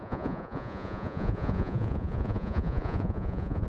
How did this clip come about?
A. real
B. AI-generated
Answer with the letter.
B